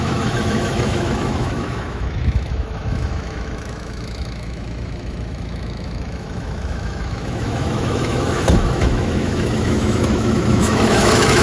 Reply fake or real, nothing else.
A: fake